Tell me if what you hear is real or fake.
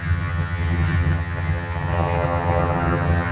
fake